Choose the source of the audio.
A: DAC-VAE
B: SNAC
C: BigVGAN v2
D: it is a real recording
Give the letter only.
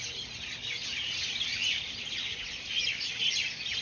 D